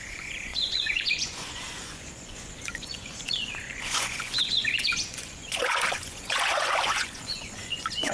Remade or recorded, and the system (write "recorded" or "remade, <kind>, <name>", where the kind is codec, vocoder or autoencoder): remade, vocoder, Vocos